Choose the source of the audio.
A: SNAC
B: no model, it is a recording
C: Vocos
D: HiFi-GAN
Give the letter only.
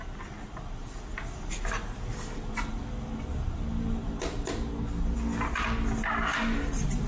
B